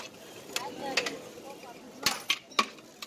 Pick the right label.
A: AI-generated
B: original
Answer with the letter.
B